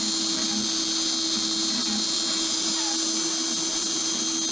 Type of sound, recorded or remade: recorded